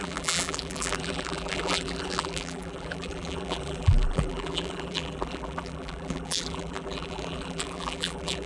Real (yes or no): no